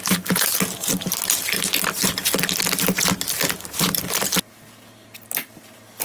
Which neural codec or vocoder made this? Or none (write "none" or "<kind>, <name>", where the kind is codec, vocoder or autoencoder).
none